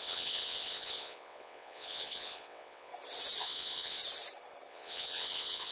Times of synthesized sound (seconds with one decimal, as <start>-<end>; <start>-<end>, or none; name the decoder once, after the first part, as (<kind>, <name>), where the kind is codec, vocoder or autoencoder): 0.0-2.9 (vocoder, WaveNeXt); 3.4-4.0; 4.7-5.7